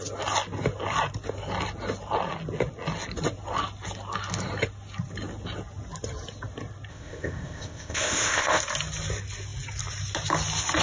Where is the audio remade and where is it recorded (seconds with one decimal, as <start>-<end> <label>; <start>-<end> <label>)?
0.0-6.9 recorded; 6.9-8.6 remade; 8.6-10.8 recorded